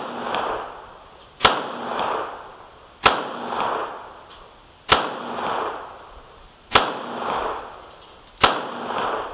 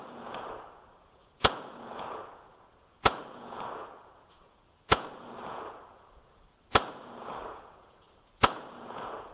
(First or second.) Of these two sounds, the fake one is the second